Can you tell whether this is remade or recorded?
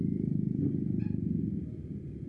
recorded